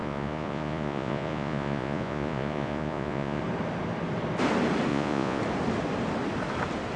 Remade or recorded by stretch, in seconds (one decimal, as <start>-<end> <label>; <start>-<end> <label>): 0.0-3.4 remade; 3.4-4.9 recorded; 4.9-5.4 remade; 5.4-7.0 recorded